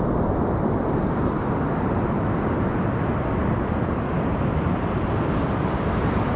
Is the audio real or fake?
real